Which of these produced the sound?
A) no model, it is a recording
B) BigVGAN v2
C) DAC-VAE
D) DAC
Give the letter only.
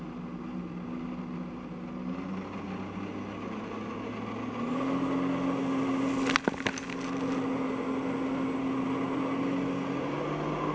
A